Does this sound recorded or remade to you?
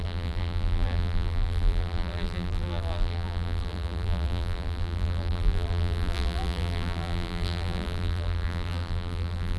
remade